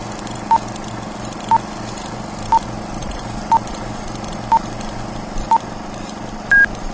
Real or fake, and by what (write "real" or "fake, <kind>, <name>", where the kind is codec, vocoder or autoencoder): real